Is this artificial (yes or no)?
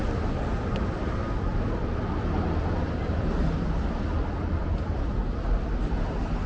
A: no